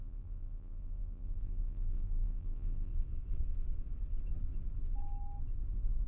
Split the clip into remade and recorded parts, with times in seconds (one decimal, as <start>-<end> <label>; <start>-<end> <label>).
0.0-2.9 remade; 2.9-6.1 recorded